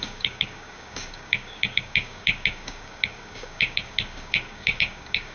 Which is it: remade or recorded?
remade